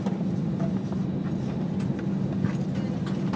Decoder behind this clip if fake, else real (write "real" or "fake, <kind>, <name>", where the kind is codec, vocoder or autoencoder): real